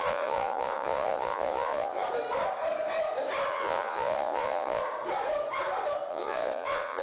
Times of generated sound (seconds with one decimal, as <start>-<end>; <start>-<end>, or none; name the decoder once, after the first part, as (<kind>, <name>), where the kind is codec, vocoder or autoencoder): 0.0-2.0 (vocoder, Vocos); 3.5-4.8; 6.1-7.0